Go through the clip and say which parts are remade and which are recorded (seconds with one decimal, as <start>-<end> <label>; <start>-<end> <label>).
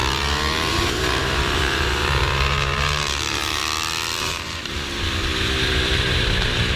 0.0-0.7 recorded; 0.7-3.6 remade; 3.6-4.2 recorded; 4.2-6.8 remade